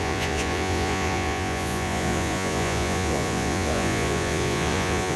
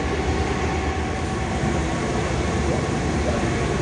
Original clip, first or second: second